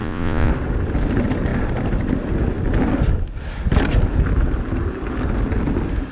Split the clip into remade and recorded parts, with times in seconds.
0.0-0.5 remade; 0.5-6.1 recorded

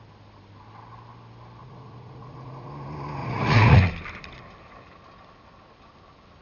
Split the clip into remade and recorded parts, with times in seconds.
0.0-1.6 recorded; 1.6-2.7 remade; 2.7-3.2 recorded; 3.2-3.9 remade; 3.9-6.4 recorded

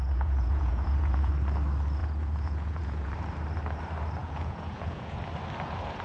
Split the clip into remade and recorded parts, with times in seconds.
0.0-1.3 remade; 1.3-2.0 recorded; 2.0-3.1 remade; 3.1-4.2 recorded; 4.2-5.2 remade; 5.2-6.0 recorded

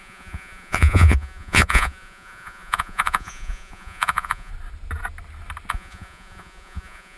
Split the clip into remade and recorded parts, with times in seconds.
0.0-4.5 remade; 4.5-5.7 recorded; 5.7-7.2 remade

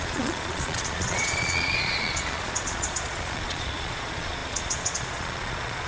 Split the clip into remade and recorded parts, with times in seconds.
0.0-5.9 remade

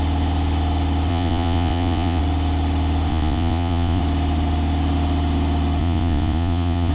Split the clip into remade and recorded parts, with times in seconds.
0.0-1.1 recorded; 1.1-2.2 remade; 2.2-3.1 recorded; 3.1-4.0 remade; 4.0-5.8 recorded; 5.8-6.9 remade

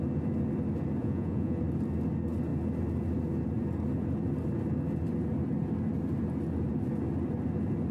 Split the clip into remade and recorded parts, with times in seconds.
0.0-1.0 recorded; 1.0-1.6 remade; 1.6-7.9 recorded